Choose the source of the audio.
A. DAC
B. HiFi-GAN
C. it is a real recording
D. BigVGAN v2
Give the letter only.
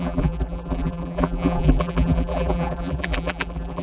D